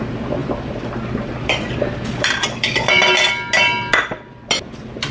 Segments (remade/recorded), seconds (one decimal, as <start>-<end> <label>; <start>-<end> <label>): 0.0-5.1 recorded